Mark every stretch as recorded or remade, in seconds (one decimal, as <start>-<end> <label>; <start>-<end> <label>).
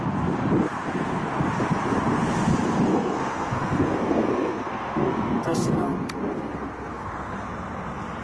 0.0-2.9 recorded; 2.9-7.4 remade; 7.4-8.2 recorded